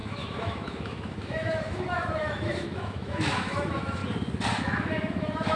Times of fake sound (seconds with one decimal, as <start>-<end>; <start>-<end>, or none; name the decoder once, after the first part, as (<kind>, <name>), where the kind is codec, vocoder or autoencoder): 0.0-4.0 (autoencoder, DAC-VAE); 4.6-5.6